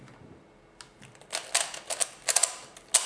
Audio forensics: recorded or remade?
recorded